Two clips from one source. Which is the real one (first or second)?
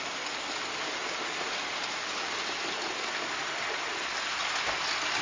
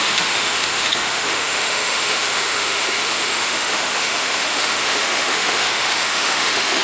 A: first